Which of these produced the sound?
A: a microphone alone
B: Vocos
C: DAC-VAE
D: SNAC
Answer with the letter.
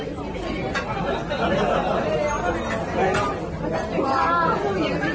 A